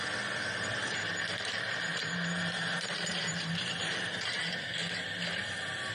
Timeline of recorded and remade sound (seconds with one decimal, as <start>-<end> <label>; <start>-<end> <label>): 0.0-0.8 recorded; 0.8-4.3 remade; 4.3-4.8 recorded; 4.8-5.9 remade